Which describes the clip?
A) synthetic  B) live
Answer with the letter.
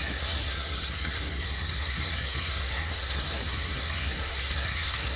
A